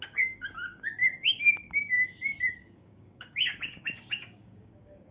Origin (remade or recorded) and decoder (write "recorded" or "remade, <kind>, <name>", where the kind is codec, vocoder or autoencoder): remade, codec, DAC